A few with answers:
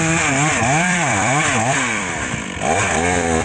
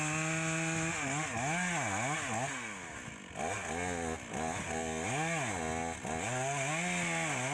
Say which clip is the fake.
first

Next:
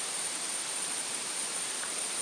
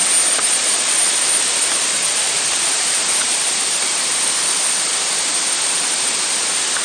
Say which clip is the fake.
first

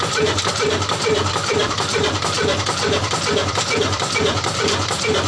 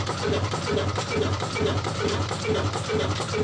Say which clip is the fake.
first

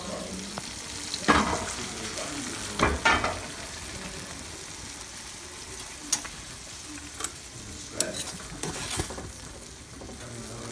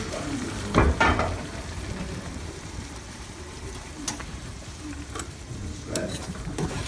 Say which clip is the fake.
second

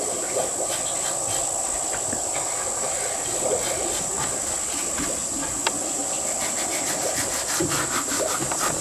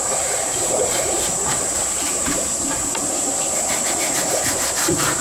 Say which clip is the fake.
second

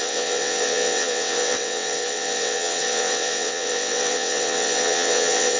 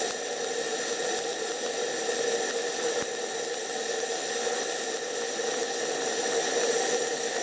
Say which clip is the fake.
first